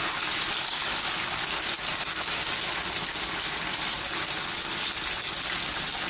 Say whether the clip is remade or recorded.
recorded